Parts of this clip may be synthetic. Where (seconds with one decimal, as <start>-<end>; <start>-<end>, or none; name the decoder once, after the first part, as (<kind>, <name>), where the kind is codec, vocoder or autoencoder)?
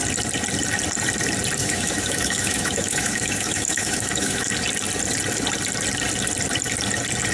1.6-4.5 (autoencoder, DAC-VAE)